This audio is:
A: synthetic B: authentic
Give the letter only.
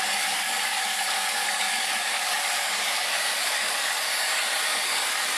A